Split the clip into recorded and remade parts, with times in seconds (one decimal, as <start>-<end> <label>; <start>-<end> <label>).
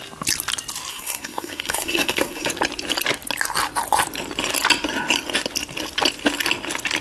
0.0-0.9 recorded; 0.9-2.5 remade; 2.5-7.0 recorded